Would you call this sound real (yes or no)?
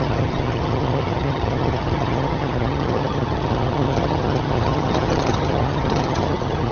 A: no